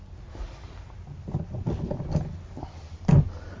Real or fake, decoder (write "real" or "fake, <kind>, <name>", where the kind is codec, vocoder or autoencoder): real